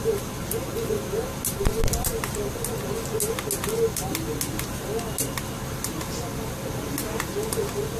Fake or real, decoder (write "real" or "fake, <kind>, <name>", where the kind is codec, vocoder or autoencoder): real